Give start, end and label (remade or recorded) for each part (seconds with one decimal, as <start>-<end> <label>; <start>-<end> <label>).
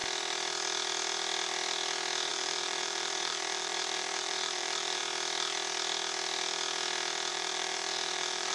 0.0-2.3 recorded; 2.3-5.0 remade; 5.0-7.3 recorded; 7.3-8.5 remade